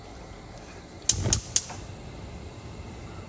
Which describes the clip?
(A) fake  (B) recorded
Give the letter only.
B